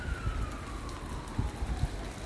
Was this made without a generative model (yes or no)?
yes